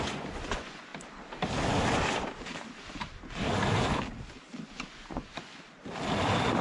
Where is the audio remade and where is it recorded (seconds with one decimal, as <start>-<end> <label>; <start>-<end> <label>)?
0.0-0.9 remade; 0.9-4.9 recorded; 4.9-5.5 remade; 5.5-6.6 recorded